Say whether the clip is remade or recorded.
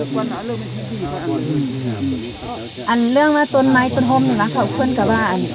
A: recorded